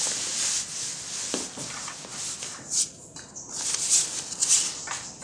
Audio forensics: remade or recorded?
recorded